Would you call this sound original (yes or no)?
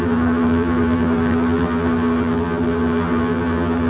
no